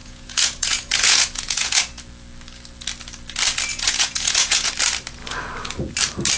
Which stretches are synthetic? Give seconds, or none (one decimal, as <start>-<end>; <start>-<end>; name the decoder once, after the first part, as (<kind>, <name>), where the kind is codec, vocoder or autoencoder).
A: 0.0-1.8 (vocoder, Vocos); 3.7-4.7